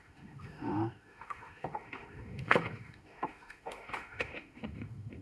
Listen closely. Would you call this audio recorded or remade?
remade